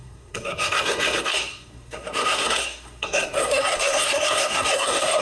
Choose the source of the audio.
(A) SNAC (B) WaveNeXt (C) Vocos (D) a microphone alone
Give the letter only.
A